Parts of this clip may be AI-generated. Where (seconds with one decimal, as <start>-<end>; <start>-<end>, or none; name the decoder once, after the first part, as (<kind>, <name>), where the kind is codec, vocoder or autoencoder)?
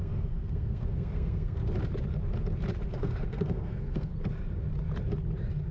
0.0-1.6 (codec, SNAC); 2.9-4.1